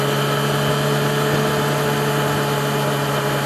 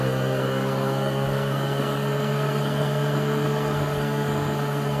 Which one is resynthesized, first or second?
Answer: second